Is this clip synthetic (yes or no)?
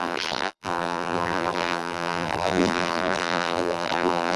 yes